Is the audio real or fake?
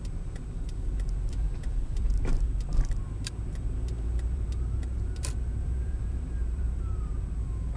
fake